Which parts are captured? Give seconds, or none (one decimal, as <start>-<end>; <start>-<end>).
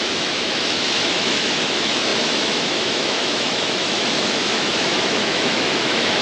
none